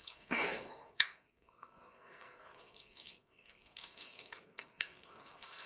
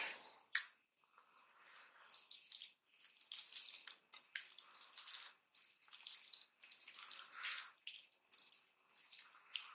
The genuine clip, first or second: second